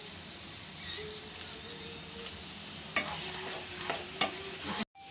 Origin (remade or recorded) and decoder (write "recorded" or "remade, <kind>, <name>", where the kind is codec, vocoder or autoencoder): recorded